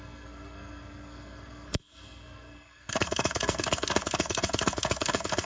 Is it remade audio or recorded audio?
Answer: remade